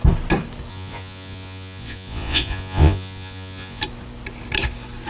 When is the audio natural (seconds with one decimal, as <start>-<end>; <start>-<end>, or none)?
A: 0.0-0.7; 3.8-5.1